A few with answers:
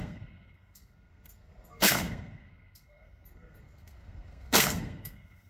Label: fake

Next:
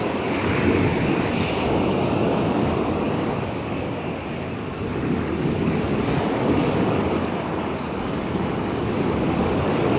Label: fake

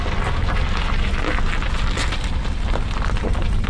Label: real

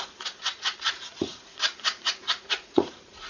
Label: fake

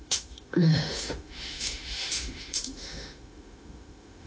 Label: fake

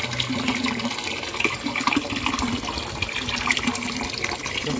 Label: real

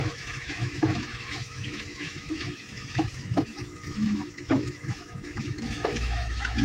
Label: fake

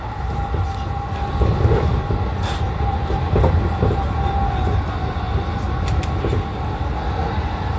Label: real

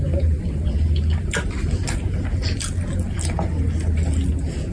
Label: real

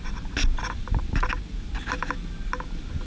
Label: real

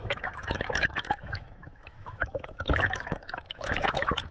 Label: fake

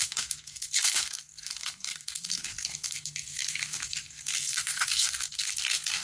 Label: fake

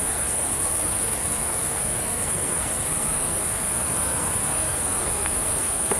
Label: fake